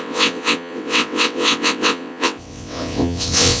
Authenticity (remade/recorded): remade